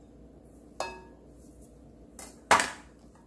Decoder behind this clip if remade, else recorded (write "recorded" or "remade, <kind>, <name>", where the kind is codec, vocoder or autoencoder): recorded